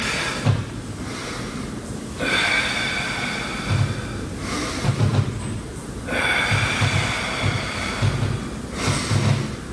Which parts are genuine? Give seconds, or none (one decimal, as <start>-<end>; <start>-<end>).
0.0-9.7